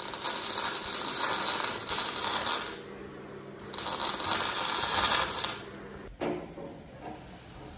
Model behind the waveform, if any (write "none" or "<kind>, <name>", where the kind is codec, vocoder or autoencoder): none